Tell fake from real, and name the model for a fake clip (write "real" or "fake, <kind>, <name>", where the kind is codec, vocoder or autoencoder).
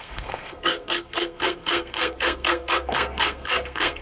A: fake, codec, SNAC